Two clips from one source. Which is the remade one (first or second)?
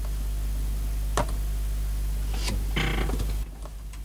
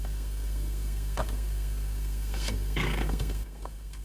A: second